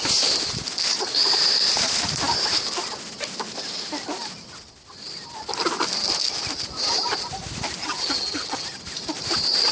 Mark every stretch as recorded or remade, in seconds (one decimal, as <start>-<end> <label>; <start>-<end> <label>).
0.0-7.8 recorded; 7.8-8.8 remade; 8.8-9.7 recorded